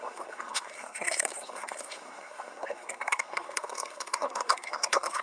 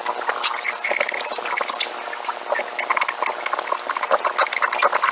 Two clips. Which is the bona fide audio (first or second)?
second